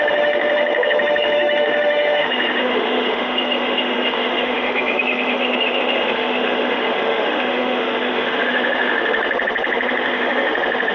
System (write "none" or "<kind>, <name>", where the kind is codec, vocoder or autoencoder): autoencoder, DAC-VAE